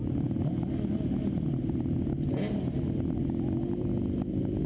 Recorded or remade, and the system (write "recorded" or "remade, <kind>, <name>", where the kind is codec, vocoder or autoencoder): recorded